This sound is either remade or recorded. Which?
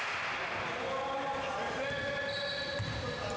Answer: recorded